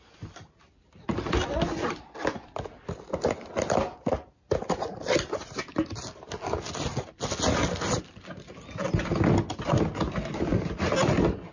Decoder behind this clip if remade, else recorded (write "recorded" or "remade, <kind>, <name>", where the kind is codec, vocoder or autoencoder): recorded